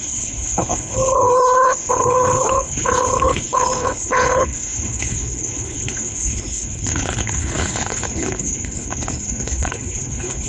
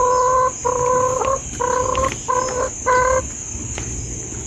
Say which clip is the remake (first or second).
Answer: first